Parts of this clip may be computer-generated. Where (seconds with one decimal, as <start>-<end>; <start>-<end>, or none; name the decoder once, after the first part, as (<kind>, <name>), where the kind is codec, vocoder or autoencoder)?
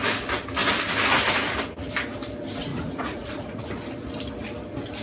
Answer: 2.7-3.7 (vocoder, Vocos)